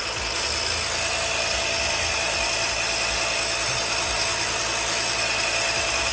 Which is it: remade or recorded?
recorded